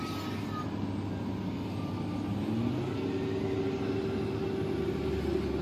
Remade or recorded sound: recorded